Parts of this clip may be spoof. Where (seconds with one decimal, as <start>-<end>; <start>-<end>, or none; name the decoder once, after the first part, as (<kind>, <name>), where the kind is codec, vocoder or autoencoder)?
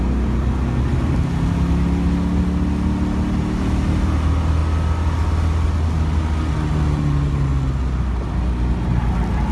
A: none